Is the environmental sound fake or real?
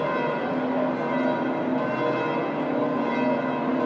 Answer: real